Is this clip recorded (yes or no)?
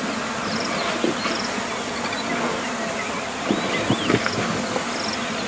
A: yes